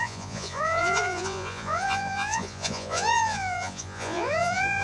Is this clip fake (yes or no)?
yes